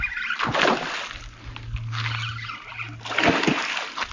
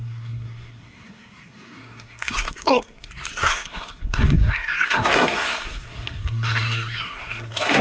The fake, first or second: second